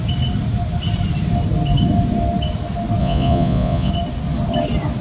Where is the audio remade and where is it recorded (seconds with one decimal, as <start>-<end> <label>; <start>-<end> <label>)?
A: 0.0-3.0 recorded; 3.0-3.9 remade; 3.9-5.0 recorded

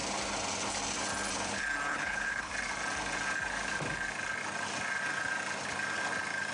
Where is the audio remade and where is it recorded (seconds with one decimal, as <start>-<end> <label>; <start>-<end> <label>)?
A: 0.0-1.9 recorded; 1.9-2.5 remade; 2.5-6.5 recorded